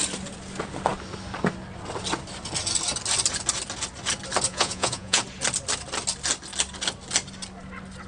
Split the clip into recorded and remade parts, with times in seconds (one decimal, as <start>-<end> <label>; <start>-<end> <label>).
0.0-4.5 recorded; 4.5-5.2 remade; 5.2-8.1 recorded